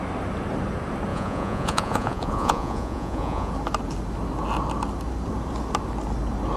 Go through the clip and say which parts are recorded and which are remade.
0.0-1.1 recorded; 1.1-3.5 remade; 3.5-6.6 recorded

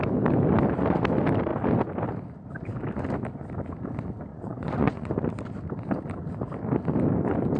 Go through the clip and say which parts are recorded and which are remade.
0.0-4.3 recorded; 4.3-5.1 remade; 5.1-7.6 recorded

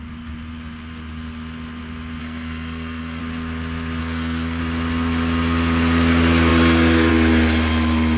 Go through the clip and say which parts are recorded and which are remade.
0.0-2.2 recorded; 2.2-3.2 remade; 3.2-4.0 recorded; 4.0-4.6 remade; 4.6-8.2 recorded

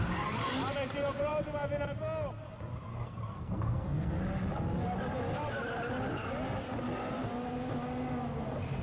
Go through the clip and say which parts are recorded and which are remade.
0.0-2.9 recorded; 2.9-4.2 remade; 4.2-8.8 recorded

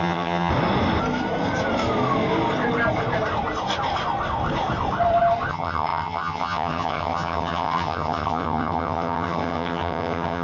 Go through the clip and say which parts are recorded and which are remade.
0.0-0.5 remade; 0.5-5.5 recorded; 5.5-10.4 remade

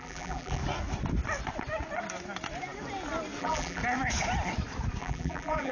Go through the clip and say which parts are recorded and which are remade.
0.0-0.6 remade; 0.6-3.4 recorded; 3.4-3.8 remade; 3.8-5.0 recorded; 5.0-5.7 remade